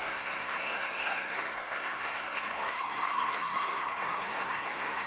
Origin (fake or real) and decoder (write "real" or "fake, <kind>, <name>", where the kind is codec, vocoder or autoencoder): fake, codec, SNAC